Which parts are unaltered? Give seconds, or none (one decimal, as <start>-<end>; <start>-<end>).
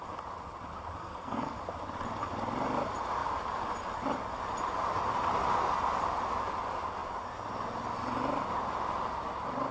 0.0-1.0; 1.6-9.7